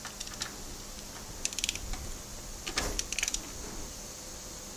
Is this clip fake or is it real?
real